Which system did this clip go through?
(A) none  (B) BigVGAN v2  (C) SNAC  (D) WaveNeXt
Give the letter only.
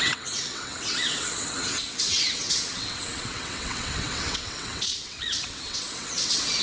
D